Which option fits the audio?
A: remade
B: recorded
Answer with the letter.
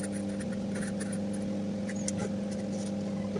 B